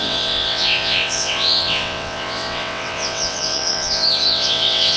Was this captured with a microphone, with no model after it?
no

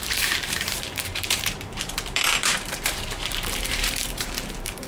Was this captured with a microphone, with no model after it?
no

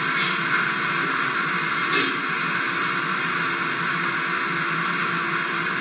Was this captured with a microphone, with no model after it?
yes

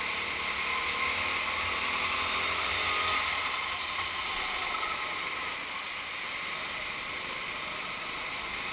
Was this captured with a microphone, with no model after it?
yes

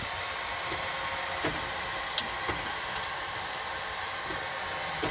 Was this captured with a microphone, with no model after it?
yes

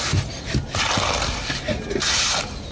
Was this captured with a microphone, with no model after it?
yes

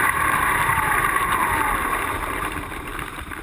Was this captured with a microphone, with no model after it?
no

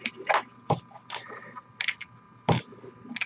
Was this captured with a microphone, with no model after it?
yes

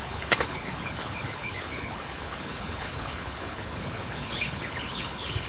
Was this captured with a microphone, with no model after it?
no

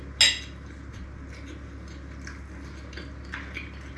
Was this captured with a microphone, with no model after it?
yes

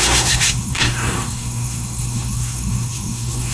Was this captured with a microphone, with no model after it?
no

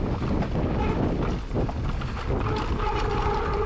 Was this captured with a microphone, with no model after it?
yes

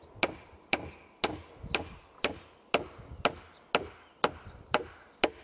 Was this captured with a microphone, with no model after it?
yes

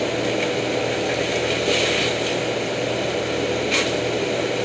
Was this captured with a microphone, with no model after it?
yes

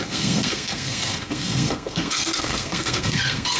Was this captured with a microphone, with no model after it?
no